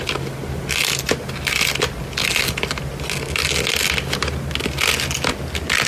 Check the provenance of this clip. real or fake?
real